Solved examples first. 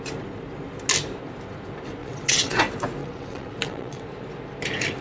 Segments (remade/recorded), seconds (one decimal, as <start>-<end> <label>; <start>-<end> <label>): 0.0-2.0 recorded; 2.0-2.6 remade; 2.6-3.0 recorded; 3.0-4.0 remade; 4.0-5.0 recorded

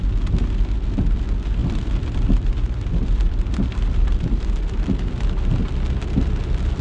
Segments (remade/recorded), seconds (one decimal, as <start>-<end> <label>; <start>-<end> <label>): 0.0-1.6 recorded; 1.6-5.5 remade; 5.5-6.8 recorded

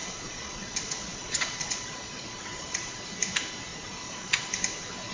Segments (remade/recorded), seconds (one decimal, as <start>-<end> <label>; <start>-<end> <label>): 0.0-3.1 remade; 3.1-3.7 recorded; 3.7-4.5 remade; 4.5-5.1 recorded

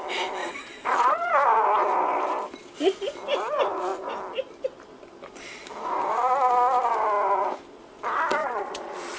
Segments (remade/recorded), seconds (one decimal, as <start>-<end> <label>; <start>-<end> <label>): 0.0-0.4 recorded; 0.4-1.3 remade; 1.3-8.4 recorded; 8.4-9.2 remade